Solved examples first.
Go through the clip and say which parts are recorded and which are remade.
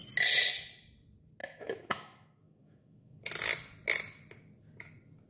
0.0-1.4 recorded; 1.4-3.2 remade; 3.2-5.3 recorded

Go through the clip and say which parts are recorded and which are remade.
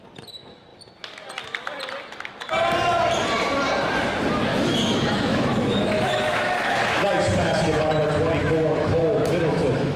0.0-4.5 recorded; 4.5-7.9 remade; 7.9-8.4 recorded; 8.4-10.0 remade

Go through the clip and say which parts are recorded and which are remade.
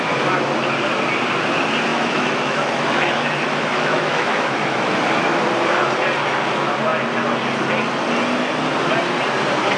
0.0-1.9 recorded; 1.9-3.2 remade; 3.2-3.7 recorded; 3.7-5.4 remade; 5.4-9.8 recorded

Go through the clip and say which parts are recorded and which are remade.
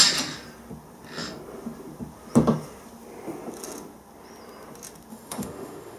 0.0-5.1 recorded; 5.1-6.0 remade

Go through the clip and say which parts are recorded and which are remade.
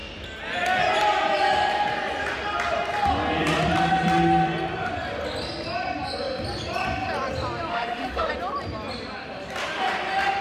0.0-7.7 recorded; 7.7-8.3 remade; 8.3-10.4 recorded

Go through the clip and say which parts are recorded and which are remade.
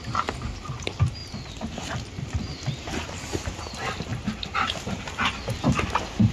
0.0-6.3 recorded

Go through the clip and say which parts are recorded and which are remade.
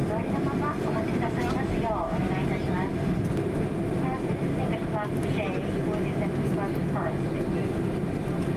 0.0-8.6 recorded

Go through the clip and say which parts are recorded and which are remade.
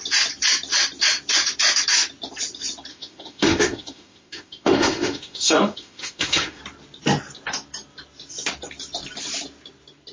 0.0-2.9 recorded; 2.9-6.6 remade; 6.6-10.1 recorded